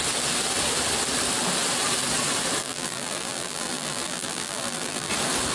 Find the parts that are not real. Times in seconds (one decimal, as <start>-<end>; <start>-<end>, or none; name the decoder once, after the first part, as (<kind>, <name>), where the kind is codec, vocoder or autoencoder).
2.6-5.1 (vocoder, BigVGAN v2)

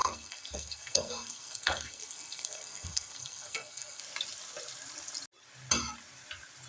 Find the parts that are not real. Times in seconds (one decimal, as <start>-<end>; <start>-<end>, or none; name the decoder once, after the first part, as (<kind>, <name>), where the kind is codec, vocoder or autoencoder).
0.0-4.0 (codec, SNAC)

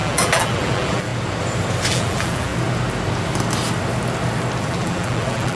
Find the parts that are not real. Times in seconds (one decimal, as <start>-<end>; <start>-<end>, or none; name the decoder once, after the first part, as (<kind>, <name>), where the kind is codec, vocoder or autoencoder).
0.0-1.1 (vocoder, BigVGAN v2); 1.9-2.5; 4.6-5.6

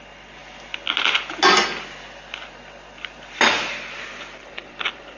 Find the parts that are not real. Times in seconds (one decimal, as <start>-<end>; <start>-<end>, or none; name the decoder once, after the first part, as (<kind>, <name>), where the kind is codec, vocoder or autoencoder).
none

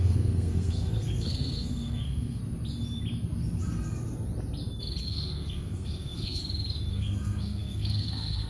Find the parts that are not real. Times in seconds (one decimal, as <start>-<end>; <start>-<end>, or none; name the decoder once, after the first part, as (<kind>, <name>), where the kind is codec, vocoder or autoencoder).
0.0-2.4 (codec, SNAC); 5.0-6.4; 6.9-8.5